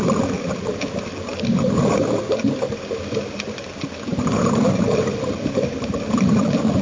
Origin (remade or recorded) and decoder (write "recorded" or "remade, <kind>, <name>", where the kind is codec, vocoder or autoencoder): recorded